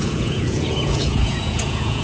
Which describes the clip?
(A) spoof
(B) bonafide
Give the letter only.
A